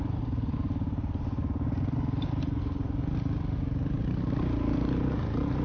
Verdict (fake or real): real